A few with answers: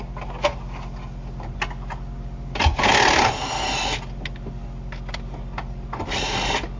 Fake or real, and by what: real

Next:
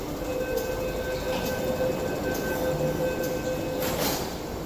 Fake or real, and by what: real